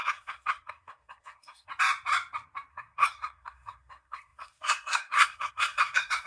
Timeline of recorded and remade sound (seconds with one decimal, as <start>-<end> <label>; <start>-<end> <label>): 0.0-1.7 remade; 1.7-2.7 recorded; 2.7-6.3 remade